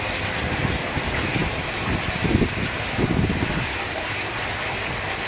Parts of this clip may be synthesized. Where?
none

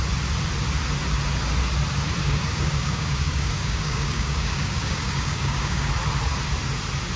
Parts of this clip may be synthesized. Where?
2.2-5.9 (codec, DAC)

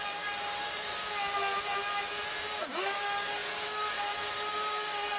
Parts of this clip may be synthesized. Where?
0.0-1.0 (codec, DAC); 2.7-5.2

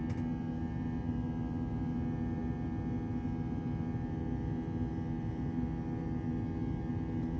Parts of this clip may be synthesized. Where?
none

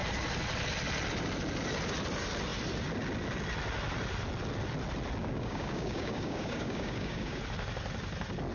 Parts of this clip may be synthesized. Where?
5.2-7.4 (codec, DAC)

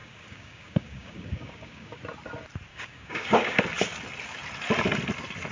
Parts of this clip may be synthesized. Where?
0.0-2.0 (codec, DAC); 2.7-3.6

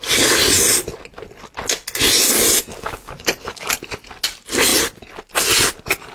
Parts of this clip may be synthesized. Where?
2.7-3.7 (codec, DAC)